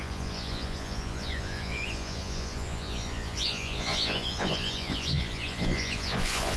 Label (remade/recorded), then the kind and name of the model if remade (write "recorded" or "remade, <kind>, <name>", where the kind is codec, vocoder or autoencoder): remade, vocoder, Vocos